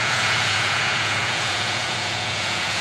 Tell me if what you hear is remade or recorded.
remade